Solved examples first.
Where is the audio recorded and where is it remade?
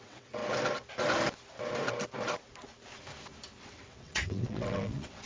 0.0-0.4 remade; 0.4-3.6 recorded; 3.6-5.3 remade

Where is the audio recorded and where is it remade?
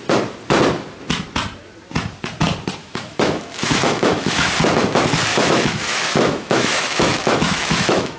0.0-2.8 recorded; 2.8-4.5 remade; 4.5-5.3 recorded; 5.3-8.2 remade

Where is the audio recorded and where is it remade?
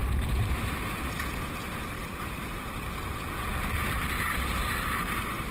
0.0-3.5 recorded; 3.5-4.3 remade; 4.3-5.5 recorded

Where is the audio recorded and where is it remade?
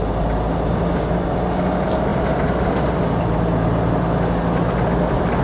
0.0-5.4 recorded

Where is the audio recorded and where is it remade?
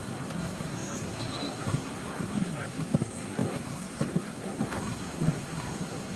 0.0-6.2 remade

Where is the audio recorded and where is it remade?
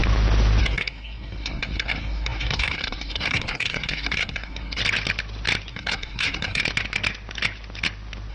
0.0-0.6 recorded; 0.6-4.8 remade; 4.8-5.7 recorded; 5.7-6.6 remade; 6.6-8.3 recorded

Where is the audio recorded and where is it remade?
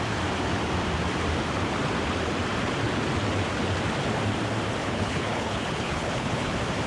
0.0-4.8 recorded; 4.8-6.5 remade; 6.5-6.9 recorded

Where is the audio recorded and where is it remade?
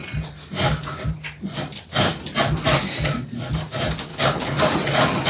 0.0-4.1 recorded; 4.1-4.6 remade; 4.6-5.3 recorded